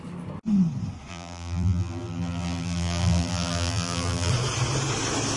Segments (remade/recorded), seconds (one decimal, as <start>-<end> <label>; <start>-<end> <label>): 0.0-1.1 recorded; 1.1-4.3 remade; 4.3-5.4 recorded